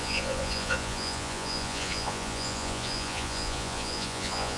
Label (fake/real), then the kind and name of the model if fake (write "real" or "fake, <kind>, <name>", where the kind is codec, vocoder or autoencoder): fake, vocoder, Vocos